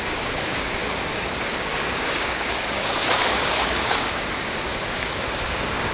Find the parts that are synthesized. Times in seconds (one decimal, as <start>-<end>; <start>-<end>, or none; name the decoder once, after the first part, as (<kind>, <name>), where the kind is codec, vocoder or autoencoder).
0.0-5.9 (codec, DAC)